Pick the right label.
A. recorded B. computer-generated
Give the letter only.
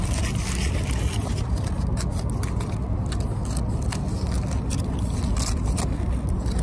A